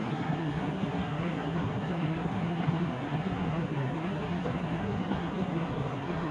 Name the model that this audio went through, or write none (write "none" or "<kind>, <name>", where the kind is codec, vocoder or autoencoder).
codec, SNAC